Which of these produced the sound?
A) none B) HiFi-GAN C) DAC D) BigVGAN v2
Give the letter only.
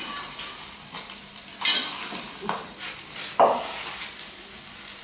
D